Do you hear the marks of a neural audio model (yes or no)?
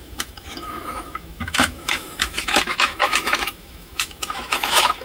yes